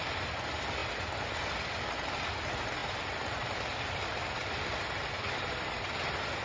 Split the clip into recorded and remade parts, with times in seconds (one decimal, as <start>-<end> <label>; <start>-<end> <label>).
0.0-6.4 recorded